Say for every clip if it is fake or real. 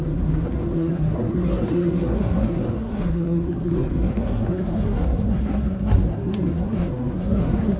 fake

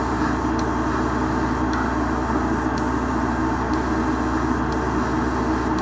real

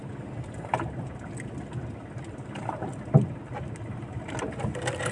real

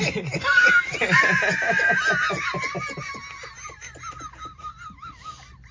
real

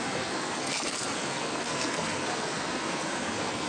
fake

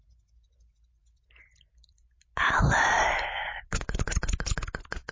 real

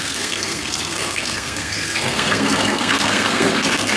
fake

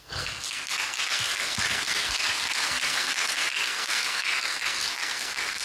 fake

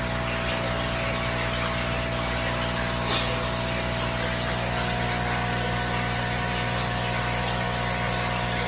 real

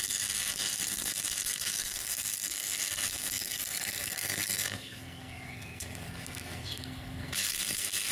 fake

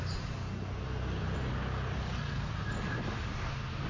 real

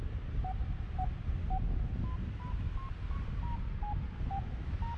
real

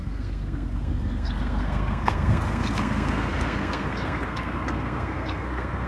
fake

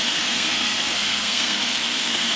fake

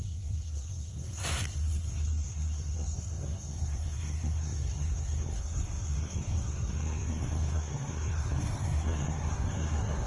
fake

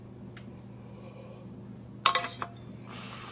real